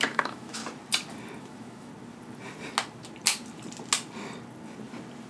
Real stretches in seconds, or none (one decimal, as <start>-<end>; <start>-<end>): 0.6-1.4; 1.9-5.3